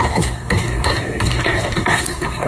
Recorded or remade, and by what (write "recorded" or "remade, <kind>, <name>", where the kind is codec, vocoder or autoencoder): remade, codec, SNAC